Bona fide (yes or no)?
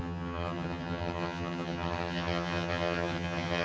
no